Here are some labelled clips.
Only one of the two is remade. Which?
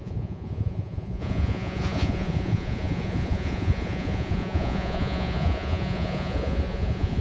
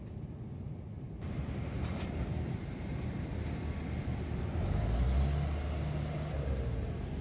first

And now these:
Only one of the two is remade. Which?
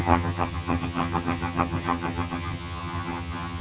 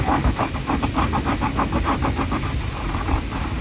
first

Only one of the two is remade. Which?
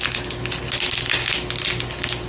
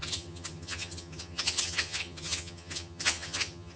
second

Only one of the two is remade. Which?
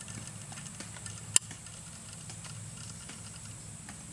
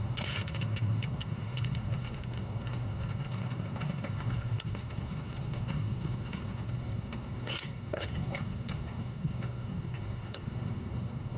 second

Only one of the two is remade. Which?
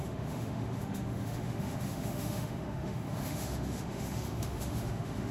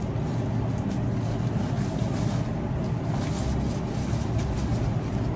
first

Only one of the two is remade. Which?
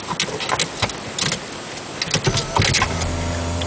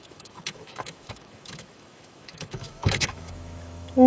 second